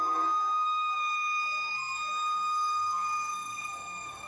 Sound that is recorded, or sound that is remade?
remade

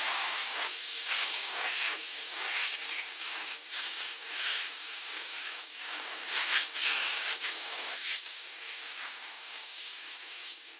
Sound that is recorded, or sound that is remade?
remade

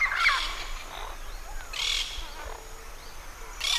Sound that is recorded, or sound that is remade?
recorded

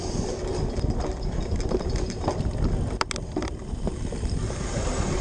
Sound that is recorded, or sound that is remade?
recorded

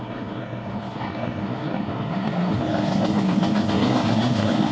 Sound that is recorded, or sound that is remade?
remade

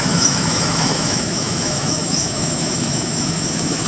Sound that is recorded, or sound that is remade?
remade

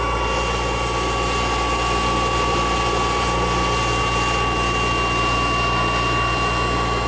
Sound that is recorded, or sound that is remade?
recorded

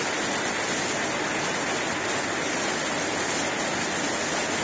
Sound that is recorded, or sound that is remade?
recorded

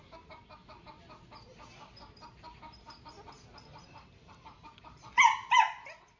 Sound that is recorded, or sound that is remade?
recorded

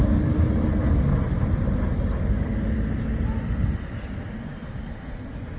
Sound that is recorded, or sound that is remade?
recorded